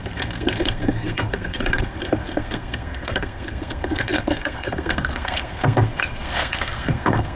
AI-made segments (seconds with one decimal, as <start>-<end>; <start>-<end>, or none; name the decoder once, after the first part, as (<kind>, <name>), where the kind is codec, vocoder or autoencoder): 0.0-7.4 (codec, SNAC)